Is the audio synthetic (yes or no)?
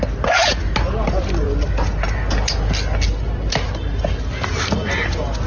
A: no